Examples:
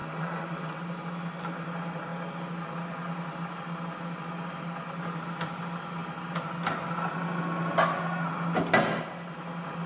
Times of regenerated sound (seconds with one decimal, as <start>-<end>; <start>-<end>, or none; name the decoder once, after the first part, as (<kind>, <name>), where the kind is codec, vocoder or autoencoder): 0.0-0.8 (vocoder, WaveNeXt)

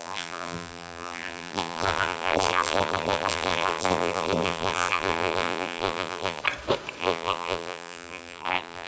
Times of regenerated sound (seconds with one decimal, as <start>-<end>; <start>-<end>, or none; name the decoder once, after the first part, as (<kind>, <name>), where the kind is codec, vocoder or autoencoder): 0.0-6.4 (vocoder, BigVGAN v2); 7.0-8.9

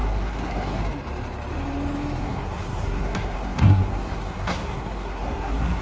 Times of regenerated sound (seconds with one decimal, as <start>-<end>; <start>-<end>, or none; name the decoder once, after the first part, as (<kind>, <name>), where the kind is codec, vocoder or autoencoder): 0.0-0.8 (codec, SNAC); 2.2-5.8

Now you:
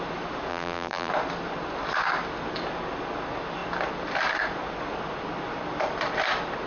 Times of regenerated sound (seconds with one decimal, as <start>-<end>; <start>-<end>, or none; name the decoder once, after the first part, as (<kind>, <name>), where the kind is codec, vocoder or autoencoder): 0.5-1.1 (vocoder, BigVGAN v2)